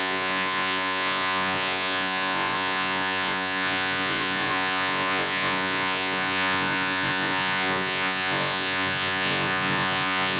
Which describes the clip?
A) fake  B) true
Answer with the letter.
A